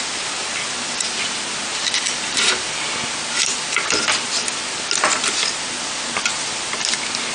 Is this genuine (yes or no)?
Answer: yes